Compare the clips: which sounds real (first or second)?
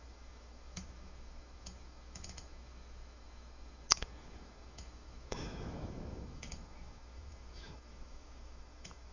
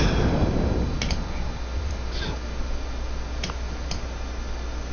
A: second